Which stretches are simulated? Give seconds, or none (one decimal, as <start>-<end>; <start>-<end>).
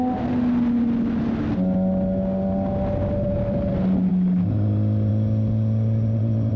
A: none